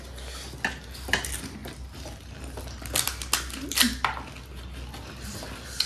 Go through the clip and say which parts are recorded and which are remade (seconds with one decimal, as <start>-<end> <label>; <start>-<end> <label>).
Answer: 0.0-5.9 recorded